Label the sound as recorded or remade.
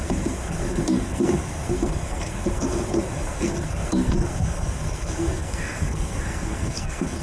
remade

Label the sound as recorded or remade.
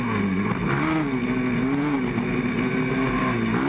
recorded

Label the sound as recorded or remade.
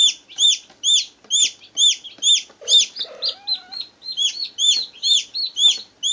recorded